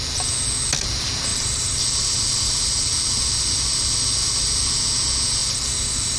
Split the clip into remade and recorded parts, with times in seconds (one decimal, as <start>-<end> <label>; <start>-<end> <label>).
0.0-1.3 recorded; 1.3-4.7 remade; 4.7-5.4 recorded; 5.4-6.2 remade